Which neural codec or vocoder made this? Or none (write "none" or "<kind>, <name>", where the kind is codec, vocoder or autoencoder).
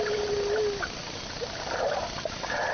none